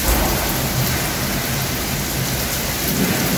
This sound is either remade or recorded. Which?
recorded